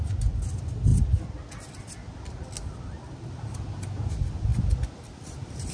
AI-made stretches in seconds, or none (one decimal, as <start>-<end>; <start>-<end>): none